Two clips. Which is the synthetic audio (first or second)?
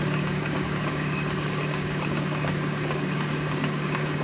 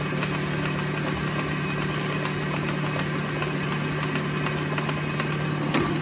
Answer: first